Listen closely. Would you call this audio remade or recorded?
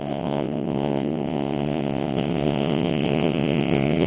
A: remade